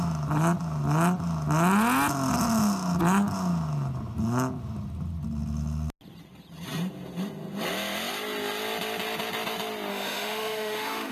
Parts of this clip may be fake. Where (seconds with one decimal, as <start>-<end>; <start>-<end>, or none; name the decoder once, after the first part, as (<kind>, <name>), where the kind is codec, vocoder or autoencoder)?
9.9-11.1 (autoencoder, DAC-VAE)